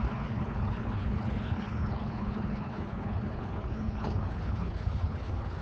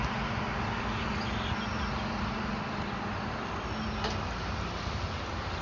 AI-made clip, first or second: first